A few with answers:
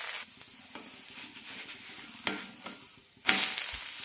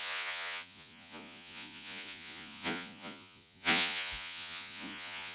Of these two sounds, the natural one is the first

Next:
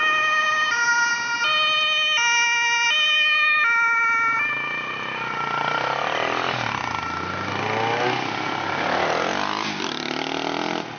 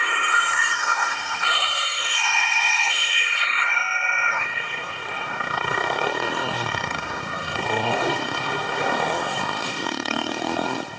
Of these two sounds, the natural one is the first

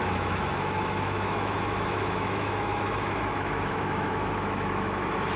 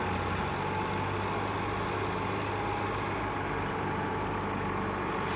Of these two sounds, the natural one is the second